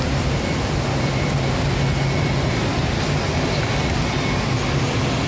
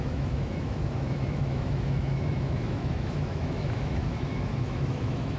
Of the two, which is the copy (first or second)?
second